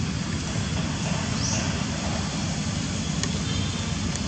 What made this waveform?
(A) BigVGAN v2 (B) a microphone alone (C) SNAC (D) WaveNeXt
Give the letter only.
B